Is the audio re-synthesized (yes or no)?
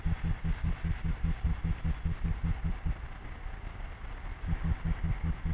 no